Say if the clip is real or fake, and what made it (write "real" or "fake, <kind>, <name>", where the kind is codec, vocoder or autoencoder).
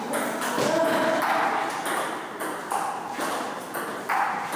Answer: real